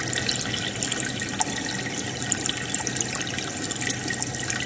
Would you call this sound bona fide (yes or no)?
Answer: yes